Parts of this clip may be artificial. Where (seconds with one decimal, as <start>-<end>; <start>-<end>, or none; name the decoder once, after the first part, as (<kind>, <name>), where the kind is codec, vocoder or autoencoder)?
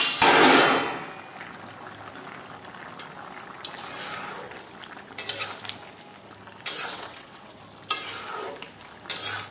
6.8-7.6 (vocoder, WaveNeXt)